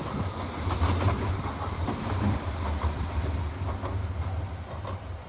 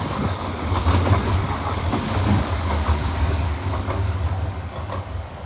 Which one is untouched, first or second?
first